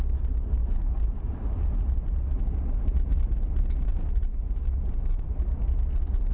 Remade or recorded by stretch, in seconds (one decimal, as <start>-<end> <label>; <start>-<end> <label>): 0.0-0.6 recorded; 0.6-2.4 remade; 2.4-6.3 recorded